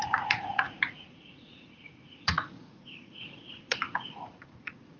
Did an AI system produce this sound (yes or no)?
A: yes